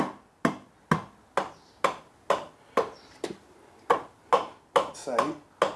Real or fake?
real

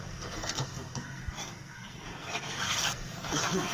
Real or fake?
fake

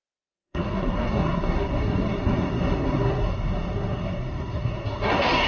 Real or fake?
fake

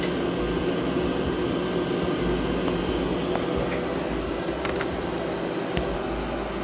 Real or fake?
real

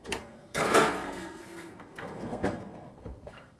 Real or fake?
fake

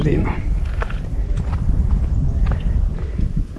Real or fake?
real